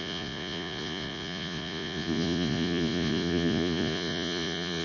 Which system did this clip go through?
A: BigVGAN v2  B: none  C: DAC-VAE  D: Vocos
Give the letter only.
D